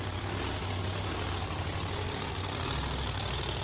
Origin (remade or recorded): recorded